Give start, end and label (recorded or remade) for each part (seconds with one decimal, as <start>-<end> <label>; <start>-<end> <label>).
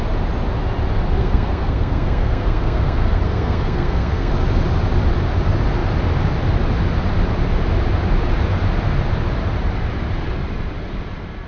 0.0-1.2 recorded; 1.2-4.3 remade; 4.3-11.5 recorded